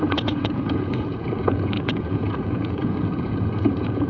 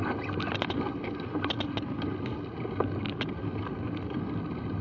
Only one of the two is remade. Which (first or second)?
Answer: first